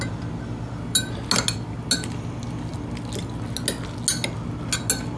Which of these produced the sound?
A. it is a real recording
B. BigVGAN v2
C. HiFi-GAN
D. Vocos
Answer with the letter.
A